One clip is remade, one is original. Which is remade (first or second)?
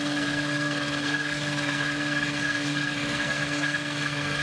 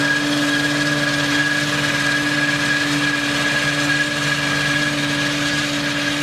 first